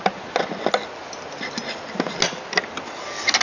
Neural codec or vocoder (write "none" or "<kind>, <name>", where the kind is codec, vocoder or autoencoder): none